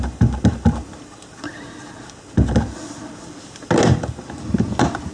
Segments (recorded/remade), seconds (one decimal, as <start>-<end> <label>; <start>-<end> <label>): 0.0-5.1 recorded